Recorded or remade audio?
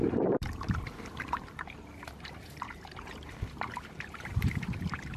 remade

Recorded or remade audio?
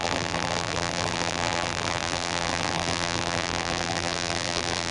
remade